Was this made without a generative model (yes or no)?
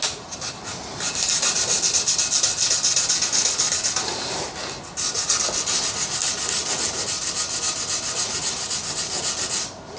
yes